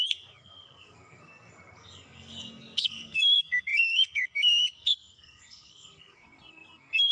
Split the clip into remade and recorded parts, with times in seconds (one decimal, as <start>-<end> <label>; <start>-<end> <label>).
0.0-7.1 remade